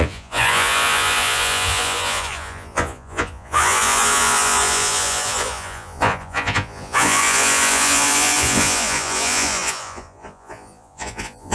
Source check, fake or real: fake